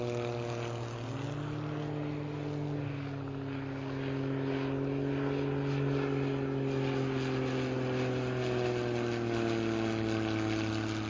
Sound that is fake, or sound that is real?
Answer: real